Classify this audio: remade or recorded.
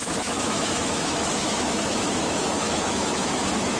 remade